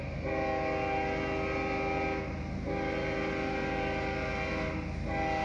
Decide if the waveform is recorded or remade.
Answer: recorded